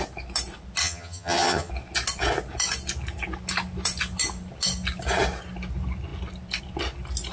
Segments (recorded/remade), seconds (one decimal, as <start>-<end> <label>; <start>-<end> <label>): 0.0-0.8 recorded; 0.8-1.7 remade; 1.7-7.3 recorded